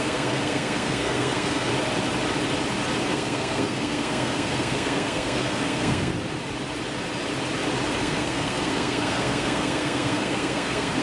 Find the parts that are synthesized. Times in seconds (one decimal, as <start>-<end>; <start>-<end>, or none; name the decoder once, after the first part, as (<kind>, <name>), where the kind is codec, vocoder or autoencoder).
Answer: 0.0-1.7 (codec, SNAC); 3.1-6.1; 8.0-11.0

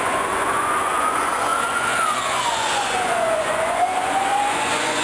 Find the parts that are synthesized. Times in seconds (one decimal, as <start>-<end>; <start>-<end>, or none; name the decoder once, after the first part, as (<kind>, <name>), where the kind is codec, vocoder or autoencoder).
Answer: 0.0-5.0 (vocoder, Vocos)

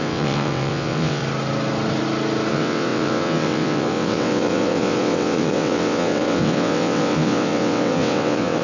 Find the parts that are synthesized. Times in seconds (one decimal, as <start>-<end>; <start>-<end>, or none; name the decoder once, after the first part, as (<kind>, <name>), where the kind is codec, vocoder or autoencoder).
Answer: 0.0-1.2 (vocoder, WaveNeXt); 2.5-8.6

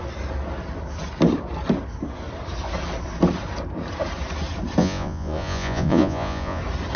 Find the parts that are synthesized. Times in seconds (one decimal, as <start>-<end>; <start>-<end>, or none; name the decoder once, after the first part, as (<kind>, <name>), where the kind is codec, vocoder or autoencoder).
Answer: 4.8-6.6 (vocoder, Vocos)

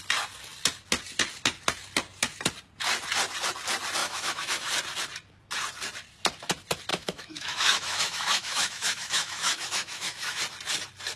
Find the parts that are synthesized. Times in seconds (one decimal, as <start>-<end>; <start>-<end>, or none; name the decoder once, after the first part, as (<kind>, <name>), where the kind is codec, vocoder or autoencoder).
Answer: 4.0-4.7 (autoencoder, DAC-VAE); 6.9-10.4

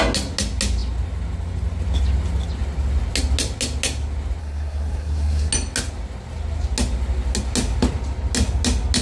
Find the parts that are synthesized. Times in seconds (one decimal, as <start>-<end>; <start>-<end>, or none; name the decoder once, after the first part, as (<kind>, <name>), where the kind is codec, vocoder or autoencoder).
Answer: 4.4-5.5 (codec, SNAC)

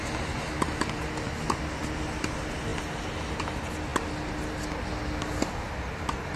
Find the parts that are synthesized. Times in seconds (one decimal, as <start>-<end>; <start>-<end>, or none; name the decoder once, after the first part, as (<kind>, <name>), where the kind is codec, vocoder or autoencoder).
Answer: none